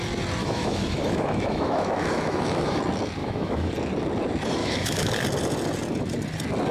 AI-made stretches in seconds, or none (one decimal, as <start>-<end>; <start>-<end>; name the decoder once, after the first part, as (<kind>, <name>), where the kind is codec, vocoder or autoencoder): 0.4-2.8 (autoencoder, DAC-VAE); 3.2-3.7; 4.6-5.1